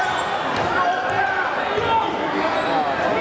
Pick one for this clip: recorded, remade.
recorded